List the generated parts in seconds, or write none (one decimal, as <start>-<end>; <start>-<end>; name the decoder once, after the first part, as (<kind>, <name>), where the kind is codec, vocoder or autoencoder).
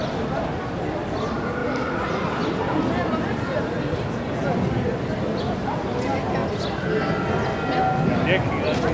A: 1.6-5.4 (vocoder, BigVGAN v2)